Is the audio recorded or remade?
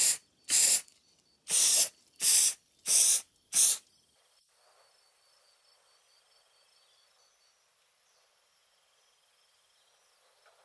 recorded